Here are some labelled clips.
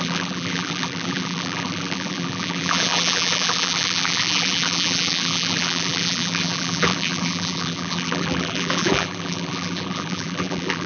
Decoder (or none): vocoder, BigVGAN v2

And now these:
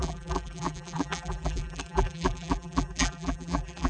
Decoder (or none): vocoder, BigVGAN v2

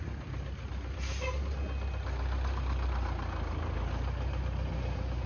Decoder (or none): none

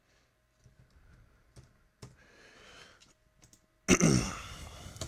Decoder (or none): none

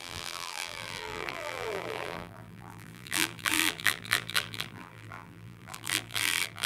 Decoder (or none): vocoder, BigVGAN v2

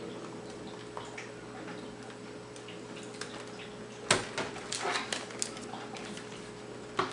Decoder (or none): none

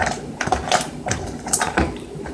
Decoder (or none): vocoder, BigVGAN v2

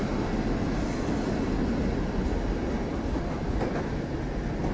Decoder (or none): none